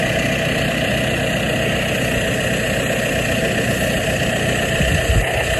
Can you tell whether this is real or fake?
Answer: real